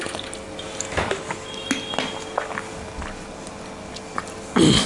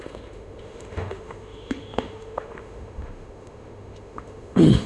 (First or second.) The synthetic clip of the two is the second